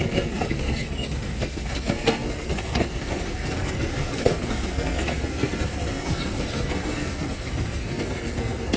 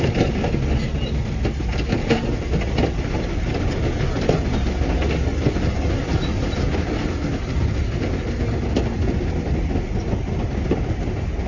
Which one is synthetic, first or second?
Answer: first